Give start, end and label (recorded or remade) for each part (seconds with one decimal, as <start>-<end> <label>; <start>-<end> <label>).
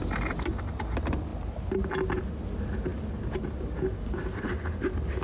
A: 0.0-5.2 recorded